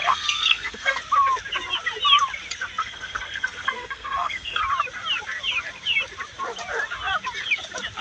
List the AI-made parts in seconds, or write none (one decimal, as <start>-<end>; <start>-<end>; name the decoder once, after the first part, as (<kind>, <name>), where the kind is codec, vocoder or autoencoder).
0.0-1.0 (codec, SNAC); 2.8-4.6